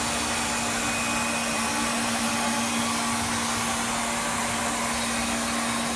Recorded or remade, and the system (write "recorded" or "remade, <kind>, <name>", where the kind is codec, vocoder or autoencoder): recorded